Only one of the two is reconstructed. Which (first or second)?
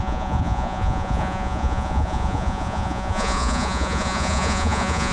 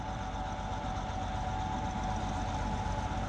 first